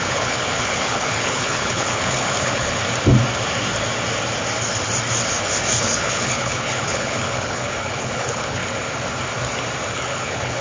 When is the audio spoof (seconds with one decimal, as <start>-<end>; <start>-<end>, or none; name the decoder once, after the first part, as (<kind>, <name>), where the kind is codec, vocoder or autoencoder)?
0.0-2.8 (codec, HILCodec); 5.8-8.6; 9.9-10.6